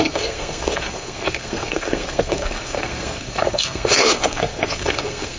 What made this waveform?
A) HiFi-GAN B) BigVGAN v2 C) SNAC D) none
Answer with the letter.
C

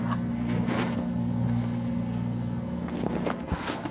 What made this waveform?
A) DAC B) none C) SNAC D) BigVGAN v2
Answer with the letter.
C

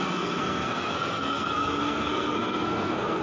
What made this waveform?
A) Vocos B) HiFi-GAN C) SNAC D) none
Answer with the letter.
C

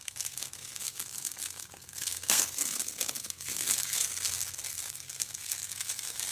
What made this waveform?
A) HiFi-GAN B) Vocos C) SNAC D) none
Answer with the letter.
C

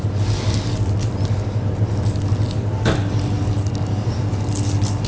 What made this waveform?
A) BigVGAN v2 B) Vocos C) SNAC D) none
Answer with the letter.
D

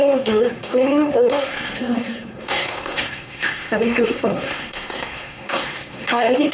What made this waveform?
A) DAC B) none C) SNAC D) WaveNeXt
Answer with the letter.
C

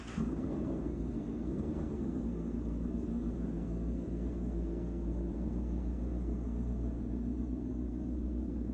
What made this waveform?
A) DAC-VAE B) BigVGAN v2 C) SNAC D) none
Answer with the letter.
C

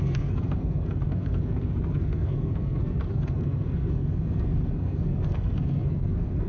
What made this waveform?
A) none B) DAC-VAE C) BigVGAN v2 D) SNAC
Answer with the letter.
D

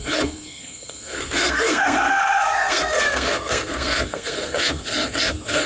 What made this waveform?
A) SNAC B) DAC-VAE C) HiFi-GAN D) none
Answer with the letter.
A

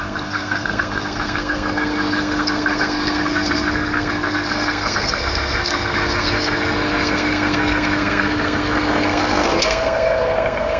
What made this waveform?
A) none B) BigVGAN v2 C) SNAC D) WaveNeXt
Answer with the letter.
C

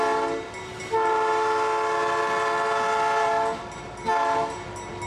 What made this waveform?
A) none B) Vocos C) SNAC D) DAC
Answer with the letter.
A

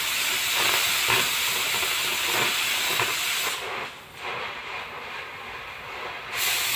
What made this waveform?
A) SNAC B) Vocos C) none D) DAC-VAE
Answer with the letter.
C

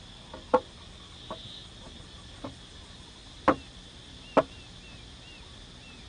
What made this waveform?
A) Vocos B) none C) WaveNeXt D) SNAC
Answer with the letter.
B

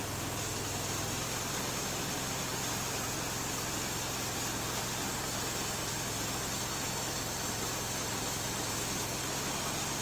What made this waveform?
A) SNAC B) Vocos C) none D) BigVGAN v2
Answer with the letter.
C